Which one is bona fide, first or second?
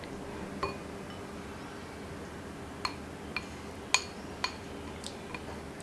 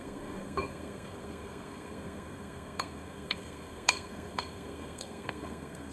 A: first